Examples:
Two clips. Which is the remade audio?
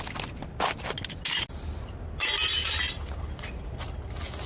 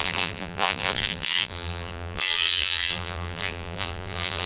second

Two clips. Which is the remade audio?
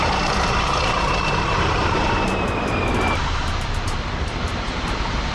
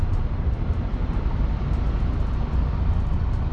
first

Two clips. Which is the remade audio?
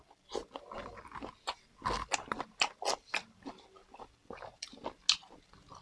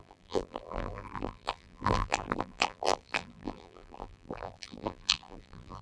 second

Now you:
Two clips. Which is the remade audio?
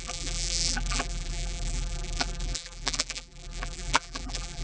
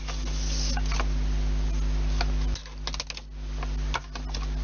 first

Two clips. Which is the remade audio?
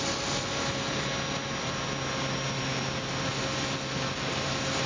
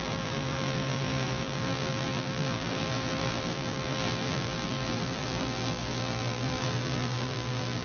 second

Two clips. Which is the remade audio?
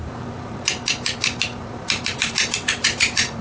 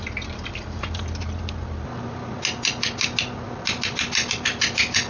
first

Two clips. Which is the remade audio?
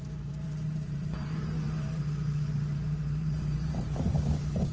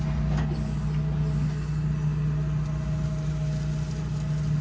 first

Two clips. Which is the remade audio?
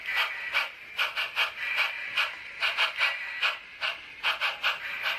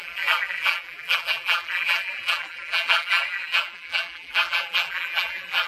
second